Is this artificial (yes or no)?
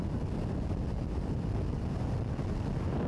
no